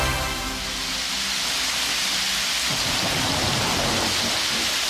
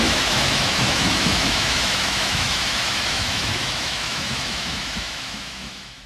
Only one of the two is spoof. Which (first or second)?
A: second